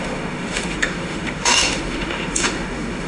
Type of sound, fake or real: fake